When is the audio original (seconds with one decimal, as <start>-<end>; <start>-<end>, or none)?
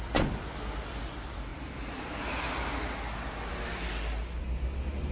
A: 0.0-5.1